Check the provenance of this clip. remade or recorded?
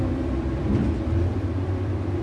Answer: remade